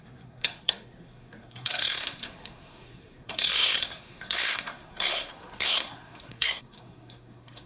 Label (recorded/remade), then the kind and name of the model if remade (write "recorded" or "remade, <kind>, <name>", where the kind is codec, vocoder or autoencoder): remade, codec, SNAC